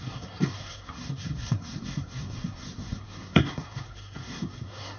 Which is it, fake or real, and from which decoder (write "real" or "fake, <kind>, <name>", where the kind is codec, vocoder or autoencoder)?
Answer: fake, codec, SNAC